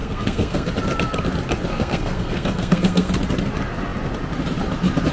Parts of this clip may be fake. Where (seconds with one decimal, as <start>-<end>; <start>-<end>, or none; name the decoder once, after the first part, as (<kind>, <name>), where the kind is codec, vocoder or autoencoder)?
0.0-0.7 (codec, SNAC); 1.7-3.1